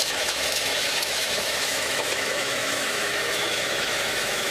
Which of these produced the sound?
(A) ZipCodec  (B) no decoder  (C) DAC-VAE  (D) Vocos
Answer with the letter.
C